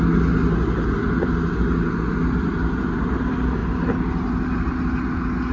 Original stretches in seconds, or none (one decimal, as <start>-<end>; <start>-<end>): 0.0-5.5